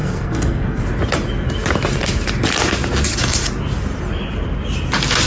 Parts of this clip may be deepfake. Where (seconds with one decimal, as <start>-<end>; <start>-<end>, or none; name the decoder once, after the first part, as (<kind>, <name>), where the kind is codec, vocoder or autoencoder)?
0.0-0.8 (codec, SNAC)